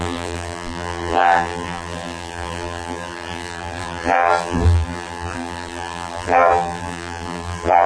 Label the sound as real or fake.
fake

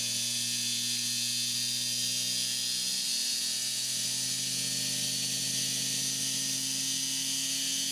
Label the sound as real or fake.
real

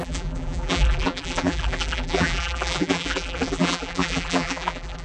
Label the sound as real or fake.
fake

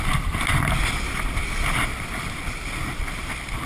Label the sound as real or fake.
fake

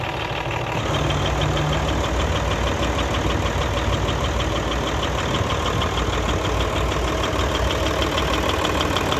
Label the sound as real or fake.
real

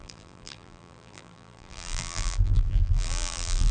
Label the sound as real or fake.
fake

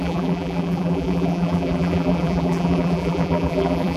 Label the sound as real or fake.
fake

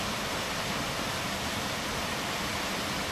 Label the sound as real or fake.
fake